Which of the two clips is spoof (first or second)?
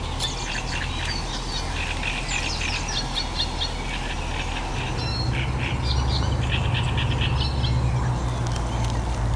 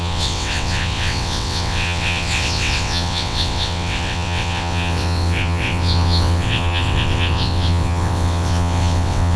second